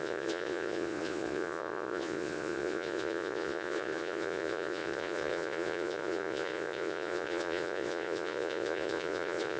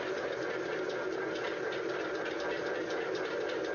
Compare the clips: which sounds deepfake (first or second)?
first